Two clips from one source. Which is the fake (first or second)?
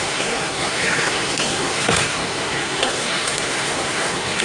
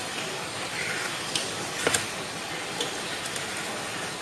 first